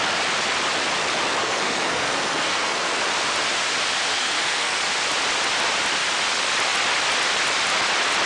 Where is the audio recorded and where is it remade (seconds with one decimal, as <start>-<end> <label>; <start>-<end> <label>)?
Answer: 0.0-1.4 recorded; 1.4-2.9 remade; 2.9-4.1 recorded; 4.1-4.8 remade; 4.8-8.2 recorded